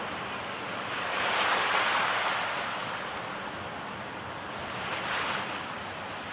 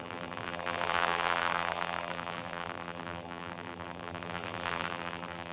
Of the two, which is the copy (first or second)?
second